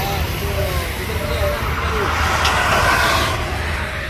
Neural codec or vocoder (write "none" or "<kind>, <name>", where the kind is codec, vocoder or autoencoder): none